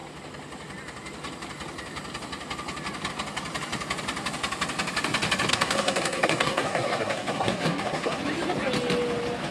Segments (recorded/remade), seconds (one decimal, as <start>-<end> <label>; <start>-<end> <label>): 0.0-5.5 recorded; 5.5-8.2 remade; 8.2-9.5 recorded